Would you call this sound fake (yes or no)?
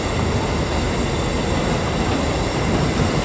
no